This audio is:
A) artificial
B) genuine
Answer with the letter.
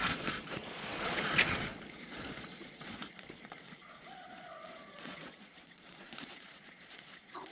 A